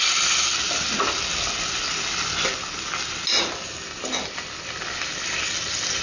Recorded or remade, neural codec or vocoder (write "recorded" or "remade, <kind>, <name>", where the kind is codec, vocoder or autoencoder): recorded